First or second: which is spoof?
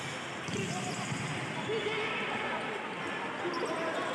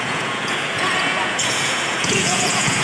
second